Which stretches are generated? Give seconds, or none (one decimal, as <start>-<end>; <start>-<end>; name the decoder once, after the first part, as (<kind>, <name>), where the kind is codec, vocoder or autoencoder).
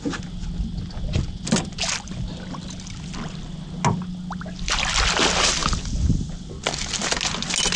none